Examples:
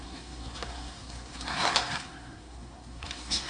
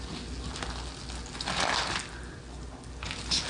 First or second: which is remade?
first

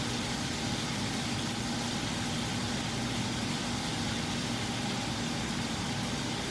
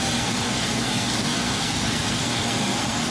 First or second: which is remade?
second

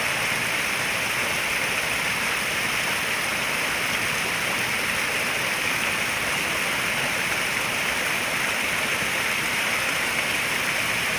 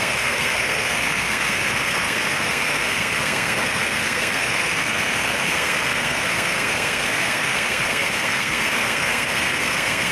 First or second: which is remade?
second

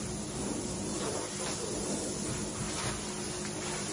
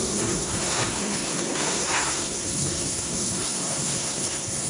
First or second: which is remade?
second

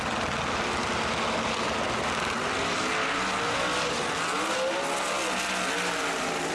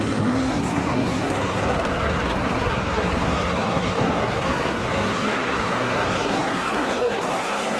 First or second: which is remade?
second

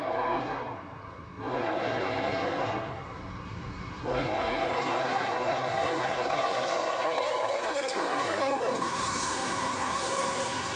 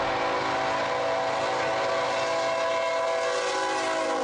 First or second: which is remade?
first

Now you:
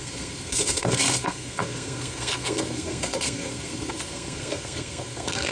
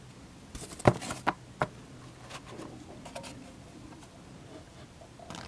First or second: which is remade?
first